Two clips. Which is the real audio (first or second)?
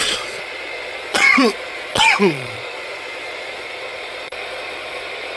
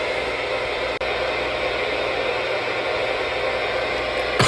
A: second